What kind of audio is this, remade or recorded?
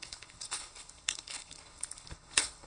remade